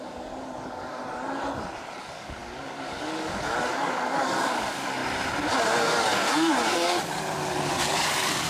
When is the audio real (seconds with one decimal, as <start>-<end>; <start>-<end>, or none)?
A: 1.0-2.0; 5.0-5.8